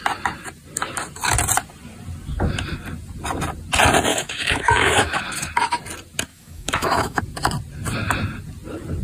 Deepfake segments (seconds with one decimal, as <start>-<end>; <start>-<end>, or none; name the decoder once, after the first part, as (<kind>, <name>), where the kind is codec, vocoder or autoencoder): 4.1-5.2 (autoencoder, DAC-VAE); 6.3-7.2